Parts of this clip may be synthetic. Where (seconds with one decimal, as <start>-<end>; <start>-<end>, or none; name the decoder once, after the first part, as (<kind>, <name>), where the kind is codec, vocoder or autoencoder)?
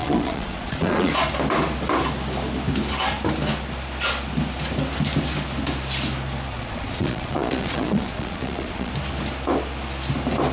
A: 0.0-1.1 (vocoder, Vocos); 6.5-8.9